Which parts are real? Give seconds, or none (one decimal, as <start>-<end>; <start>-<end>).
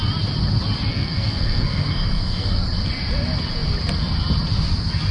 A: 0.0-0.9; 2.6-5.1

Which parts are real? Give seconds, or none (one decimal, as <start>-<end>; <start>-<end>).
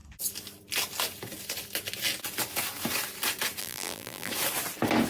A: 0.0-3.6; 4.3-5.1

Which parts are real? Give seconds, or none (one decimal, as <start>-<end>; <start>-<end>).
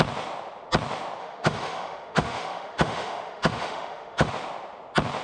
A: 0.0-1.2; 4.3-5.2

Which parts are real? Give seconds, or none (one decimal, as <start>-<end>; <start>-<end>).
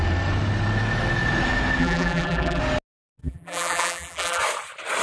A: 0.0-1.8; 2.6-3.2; 4.4-5.0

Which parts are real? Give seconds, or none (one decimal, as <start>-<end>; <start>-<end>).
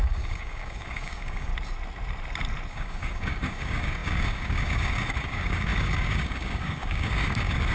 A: 1.5-2.7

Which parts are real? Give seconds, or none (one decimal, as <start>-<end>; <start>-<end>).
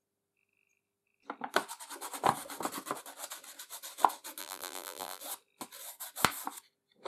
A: 0.0-4.4; 5.2-7.1